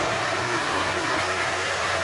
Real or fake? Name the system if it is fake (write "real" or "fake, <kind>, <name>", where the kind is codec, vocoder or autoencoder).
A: fake, codec, SNAC